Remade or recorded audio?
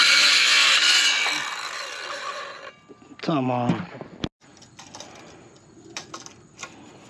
recorded